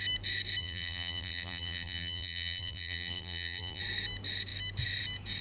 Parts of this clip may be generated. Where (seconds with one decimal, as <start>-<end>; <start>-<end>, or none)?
0.6-3.8